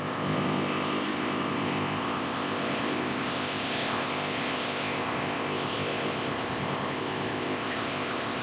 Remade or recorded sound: remade